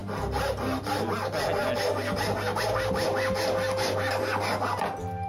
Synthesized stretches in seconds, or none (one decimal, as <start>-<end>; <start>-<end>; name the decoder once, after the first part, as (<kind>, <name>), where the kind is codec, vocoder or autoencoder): none